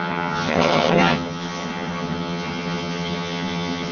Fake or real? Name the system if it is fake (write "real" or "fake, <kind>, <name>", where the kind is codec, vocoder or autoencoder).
fake, vocoder, HiFi-GAN